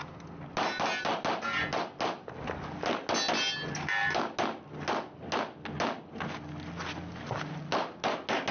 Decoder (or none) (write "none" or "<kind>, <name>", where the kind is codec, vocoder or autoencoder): none